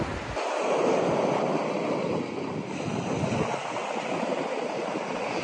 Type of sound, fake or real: real